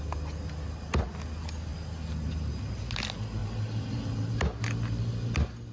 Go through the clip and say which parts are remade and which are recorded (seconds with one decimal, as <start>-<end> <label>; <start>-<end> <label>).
0.0-3.4 recorded; 3.4-4.3 remade; 4.3-5.7 recorded